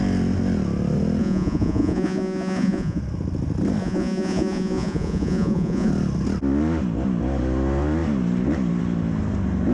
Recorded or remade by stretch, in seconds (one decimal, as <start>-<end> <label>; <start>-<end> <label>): 0.0-1.2 recorded; 1.2-3.0 remade; 3.0-3.8 recorded; 3.8-5.9 remade; 5.9-9.7 recorded